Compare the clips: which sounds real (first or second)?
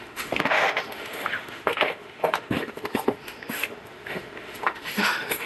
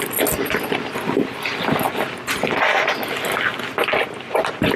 second